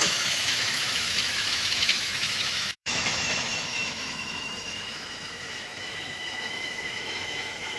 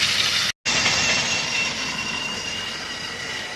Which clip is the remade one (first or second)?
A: first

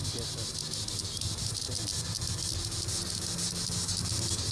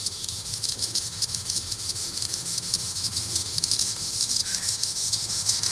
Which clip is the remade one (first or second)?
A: second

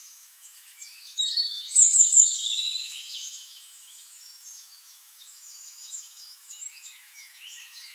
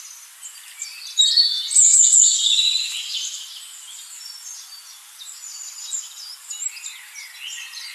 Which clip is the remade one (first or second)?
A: first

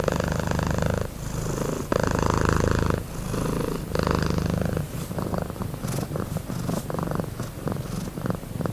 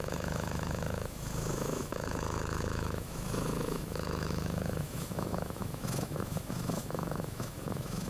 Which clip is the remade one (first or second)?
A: second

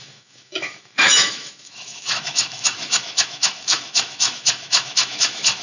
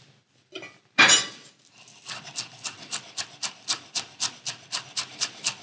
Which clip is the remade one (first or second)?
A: first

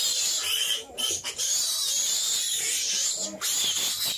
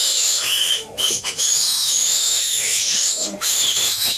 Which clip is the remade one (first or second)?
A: second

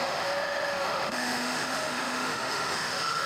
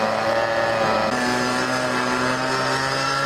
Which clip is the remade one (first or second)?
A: first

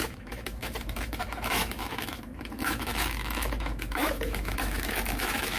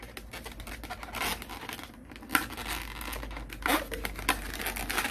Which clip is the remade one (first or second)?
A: first